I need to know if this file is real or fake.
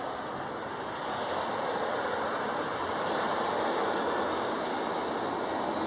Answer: real